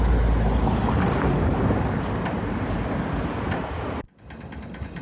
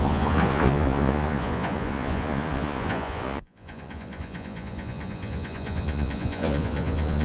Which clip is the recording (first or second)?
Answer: first